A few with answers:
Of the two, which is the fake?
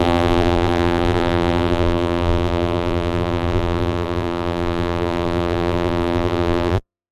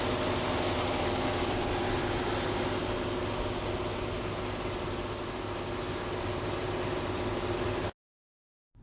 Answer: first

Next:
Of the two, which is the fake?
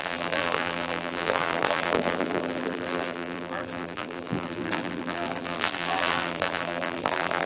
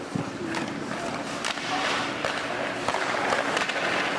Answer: first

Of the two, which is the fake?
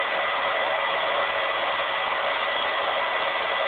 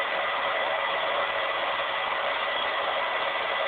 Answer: second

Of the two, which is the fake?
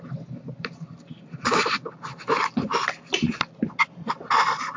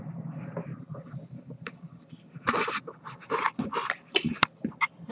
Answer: second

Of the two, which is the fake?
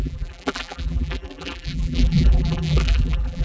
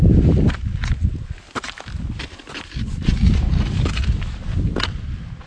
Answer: first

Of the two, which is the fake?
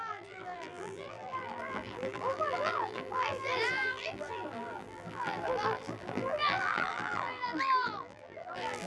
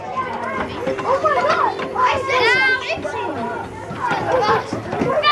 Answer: first